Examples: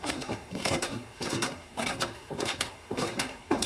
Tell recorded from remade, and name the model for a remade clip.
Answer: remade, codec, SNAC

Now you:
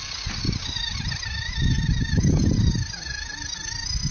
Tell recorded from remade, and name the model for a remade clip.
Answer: recorded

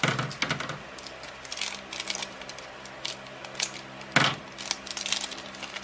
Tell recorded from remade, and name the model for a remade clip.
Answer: recorded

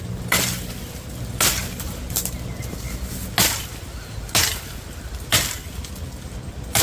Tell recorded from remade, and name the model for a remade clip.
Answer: recorded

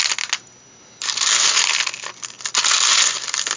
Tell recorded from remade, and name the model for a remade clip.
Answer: recorded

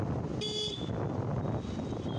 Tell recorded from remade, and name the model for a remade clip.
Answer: recorded